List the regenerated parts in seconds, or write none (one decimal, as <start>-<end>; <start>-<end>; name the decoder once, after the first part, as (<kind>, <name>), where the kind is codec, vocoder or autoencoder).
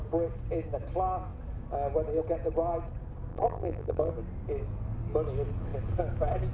3.3-4.1 (vocoder, BigVGAN v2)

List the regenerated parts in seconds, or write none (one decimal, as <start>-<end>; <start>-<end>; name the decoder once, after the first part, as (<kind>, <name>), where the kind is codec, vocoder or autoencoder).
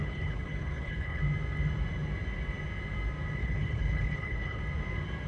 0.0-1.2 (codec, HILCodec); 3.4-4.6